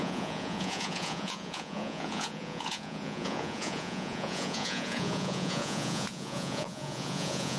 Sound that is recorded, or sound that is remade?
remade